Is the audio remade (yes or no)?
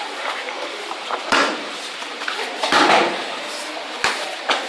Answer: yes